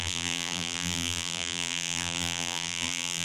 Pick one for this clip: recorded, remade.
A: remade